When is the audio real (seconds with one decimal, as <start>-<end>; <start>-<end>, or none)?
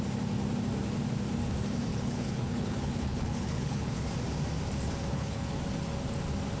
0.0-1.9; 4.1-5.1; 5.6-6.6